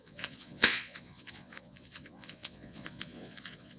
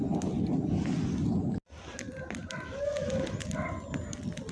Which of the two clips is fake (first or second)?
first